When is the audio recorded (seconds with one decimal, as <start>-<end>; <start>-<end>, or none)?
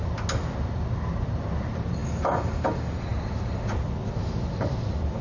0.0-5.2